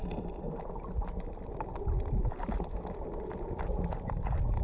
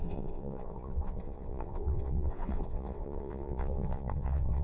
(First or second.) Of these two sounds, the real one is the first